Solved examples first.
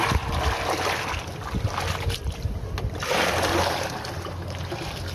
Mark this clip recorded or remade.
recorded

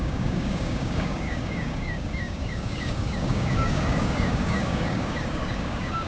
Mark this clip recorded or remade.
remade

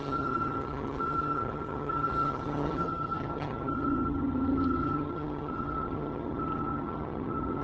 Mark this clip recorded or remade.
remade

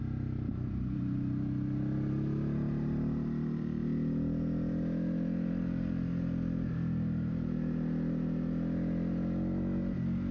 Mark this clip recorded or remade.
recorded